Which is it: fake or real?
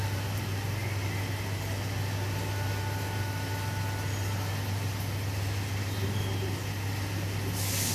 real